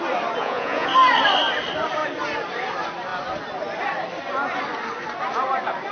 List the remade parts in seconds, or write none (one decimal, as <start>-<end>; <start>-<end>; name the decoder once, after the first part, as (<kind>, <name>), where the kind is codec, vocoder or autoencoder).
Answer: 0.4-0.9 (vocoder, Vocos)